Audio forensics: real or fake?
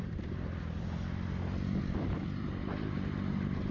real